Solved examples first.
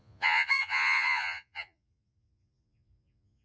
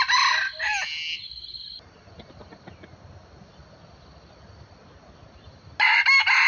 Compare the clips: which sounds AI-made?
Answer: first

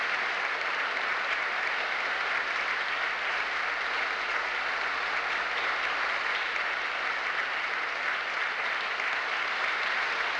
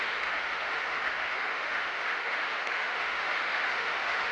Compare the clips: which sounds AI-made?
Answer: second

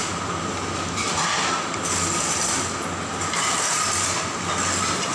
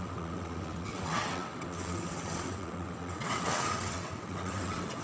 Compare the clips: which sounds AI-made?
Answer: second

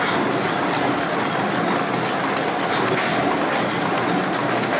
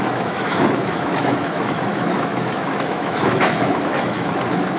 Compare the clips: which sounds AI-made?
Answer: second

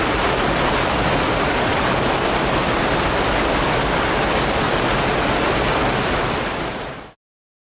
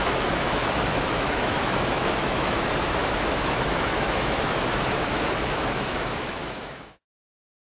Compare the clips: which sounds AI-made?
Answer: second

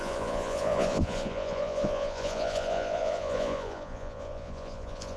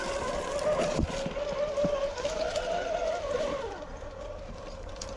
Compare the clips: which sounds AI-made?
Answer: first